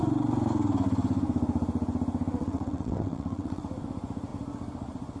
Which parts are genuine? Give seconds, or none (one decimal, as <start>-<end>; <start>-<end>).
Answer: 0.0-2.4; 3.6-5.2

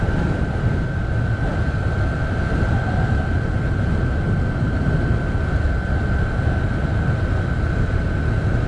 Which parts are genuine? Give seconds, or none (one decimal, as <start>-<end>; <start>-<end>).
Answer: 0.0-8.7

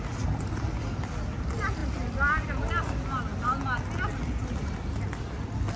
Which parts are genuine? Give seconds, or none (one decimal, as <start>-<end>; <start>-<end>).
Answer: 0.0-5.8